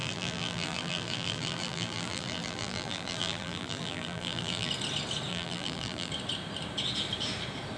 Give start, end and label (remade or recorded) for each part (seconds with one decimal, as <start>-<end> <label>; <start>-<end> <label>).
0.0-4.7 remade; 4.7-5.3 recorded; 5.3-6.1 remade; 6.1-7.8 recorded